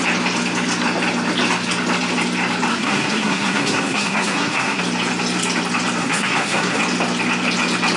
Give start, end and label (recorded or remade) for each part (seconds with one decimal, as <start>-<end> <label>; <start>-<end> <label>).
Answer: 0.0-2.7 recorded; 2.7-4.8 remade; 4.8-6.0 recorded; 6.0-6.8 remade; 6.8-8.0 recorded